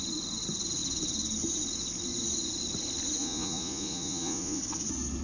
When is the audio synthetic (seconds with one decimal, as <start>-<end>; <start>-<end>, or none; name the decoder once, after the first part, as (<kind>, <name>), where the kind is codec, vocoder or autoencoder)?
3.2-4.6 (vocoder, Vocos)